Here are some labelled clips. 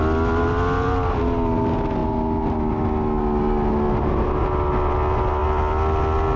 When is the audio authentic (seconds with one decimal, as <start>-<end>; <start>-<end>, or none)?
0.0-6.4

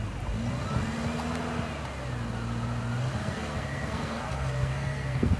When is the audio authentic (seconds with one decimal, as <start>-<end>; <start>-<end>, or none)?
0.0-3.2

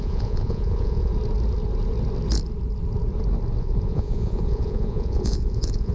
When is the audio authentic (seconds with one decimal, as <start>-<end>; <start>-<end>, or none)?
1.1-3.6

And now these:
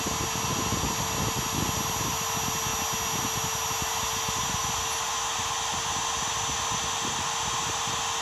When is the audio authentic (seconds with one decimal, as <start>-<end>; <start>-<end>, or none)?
0.0-8.2

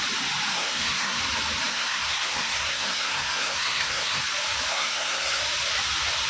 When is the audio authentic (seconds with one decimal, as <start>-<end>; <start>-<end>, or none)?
0.0-0.5; 1.2-1.7; 4.2-4.7; 5.4-6.3

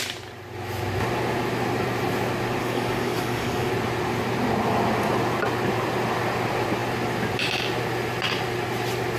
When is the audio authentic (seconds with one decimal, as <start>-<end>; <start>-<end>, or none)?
0.0-2.6; 3.7-9.2